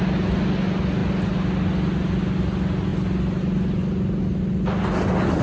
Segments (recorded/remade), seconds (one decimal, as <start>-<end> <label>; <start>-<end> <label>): 0.0-5.4 recorded